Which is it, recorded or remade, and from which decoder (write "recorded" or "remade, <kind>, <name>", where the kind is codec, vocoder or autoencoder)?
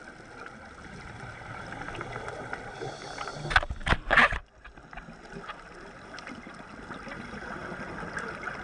recorded